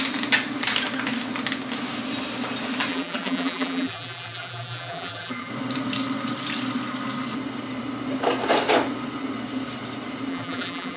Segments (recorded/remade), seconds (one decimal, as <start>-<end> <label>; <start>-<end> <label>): 0.0-2.9 recorded; 2.9-5.5 remade; 5.5-10.3 recorded; 10.3-11.0 remade